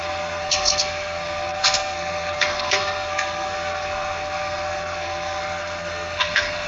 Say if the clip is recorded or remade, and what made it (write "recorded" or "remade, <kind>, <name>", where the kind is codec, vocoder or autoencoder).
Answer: remade, codec, SNAC